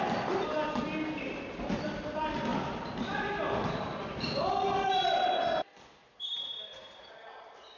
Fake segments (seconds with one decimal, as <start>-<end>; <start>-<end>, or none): none